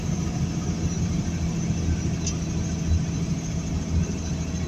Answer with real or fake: real